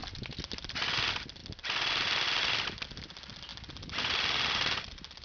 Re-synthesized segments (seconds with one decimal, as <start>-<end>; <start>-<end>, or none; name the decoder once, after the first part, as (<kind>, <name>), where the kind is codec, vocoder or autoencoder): none